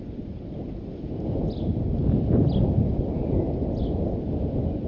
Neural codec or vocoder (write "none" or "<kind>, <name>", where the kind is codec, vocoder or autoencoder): none